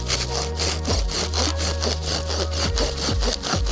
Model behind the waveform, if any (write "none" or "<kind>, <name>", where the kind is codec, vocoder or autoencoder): none